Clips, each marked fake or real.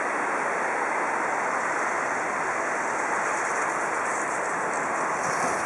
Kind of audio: real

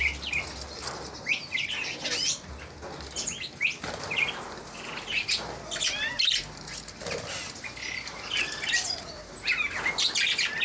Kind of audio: real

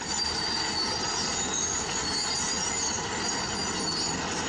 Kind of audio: real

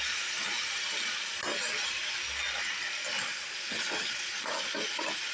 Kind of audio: real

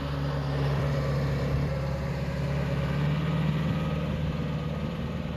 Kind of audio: real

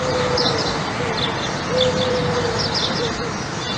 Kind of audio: real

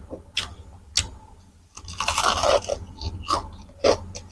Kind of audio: real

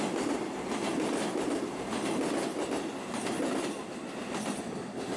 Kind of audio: real